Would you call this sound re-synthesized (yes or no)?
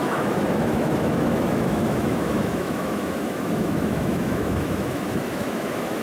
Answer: yes